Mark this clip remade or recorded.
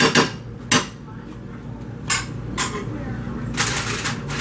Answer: recorded